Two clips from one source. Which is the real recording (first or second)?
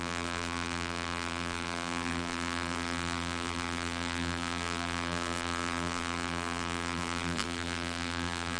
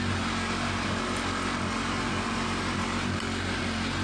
second